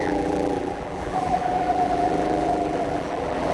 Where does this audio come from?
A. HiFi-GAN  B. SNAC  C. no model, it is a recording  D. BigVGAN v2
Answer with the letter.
D